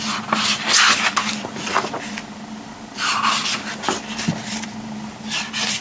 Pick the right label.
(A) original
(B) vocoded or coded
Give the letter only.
A